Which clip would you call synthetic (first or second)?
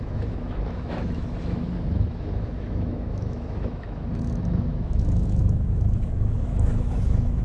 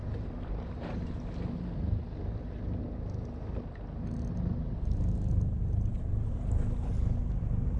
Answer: first